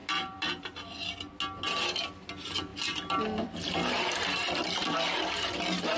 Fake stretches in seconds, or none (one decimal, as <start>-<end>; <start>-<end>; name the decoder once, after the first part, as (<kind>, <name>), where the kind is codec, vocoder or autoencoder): 0.0-1.1 (vocoder, BigVGAN v2); 2.7-4.9